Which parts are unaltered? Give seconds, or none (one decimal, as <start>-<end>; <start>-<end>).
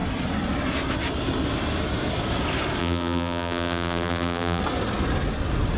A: 0.0-2.8; 4.6-5.8